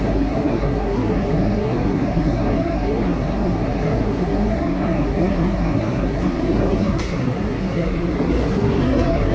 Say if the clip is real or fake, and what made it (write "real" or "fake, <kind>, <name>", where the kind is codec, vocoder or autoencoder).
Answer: fake, codec, SNAC